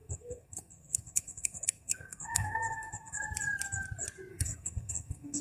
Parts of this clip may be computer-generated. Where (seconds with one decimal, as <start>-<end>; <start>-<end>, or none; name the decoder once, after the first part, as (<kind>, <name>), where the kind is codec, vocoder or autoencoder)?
0.0-3.2 (codec, SNAC); 4.3-5.4